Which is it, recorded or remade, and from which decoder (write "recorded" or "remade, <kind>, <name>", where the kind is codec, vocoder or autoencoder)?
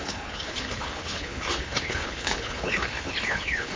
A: remade, codec, HILCodec